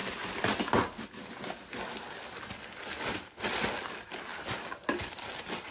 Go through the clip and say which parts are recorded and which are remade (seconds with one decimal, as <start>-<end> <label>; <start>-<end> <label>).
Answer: 0.0-5.7 recorded